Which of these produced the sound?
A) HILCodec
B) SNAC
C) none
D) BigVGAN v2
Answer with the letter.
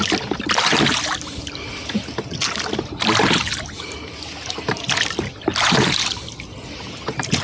C